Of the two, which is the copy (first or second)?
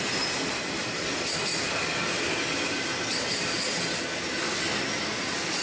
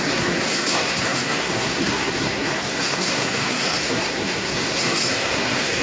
second